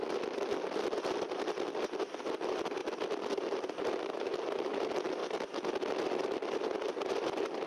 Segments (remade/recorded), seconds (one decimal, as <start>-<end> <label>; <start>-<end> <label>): 0.0-7.7 remade